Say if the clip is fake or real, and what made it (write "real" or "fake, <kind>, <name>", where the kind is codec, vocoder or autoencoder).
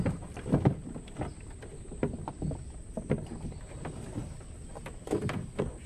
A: real